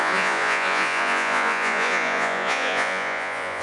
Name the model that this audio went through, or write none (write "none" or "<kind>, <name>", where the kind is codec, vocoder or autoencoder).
vocoder, Vocos